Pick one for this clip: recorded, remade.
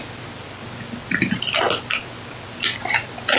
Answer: recorded